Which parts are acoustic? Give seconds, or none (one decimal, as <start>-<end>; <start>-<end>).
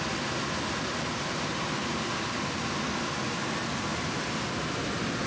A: 0.0-5.3